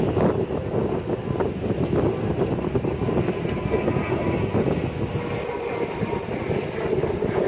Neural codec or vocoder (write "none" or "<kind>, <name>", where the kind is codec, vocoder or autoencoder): none